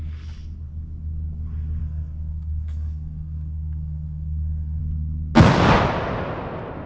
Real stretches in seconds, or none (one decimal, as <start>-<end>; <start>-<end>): 0.0-1.8; 4.8-6.9